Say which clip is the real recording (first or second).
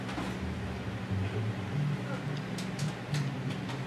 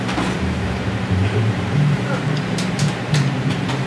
first